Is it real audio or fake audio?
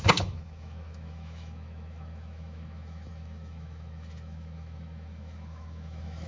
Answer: fake